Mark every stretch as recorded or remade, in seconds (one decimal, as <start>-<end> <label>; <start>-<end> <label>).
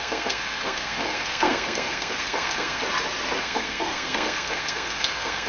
0.0-2.8 remade; 2.8-3.4 recorded; 3.4-5.5 remade